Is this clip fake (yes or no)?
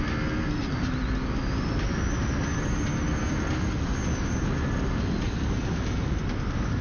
no